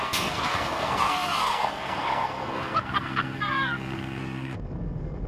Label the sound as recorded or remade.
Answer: remade